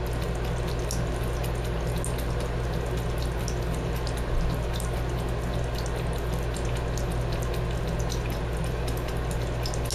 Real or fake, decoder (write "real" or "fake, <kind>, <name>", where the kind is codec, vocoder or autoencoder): real